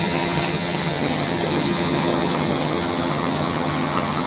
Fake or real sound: fake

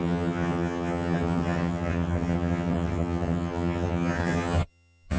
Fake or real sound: fake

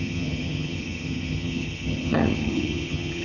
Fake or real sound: fake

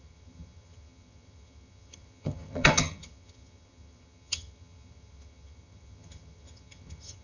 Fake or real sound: fake